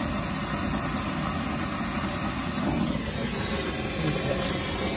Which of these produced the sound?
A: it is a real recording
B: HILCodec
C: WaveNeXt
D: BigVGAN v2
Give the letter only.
A